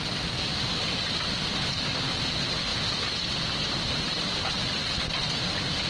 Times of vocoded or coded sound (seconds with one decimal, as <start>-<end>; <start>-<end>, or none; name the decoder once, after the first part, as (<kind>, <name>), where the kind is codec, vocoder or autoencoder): none